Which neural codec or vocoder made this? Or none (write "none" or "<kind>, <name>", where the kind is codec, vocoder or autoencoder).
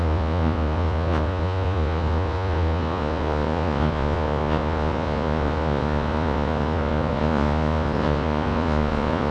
vocoder, Vocos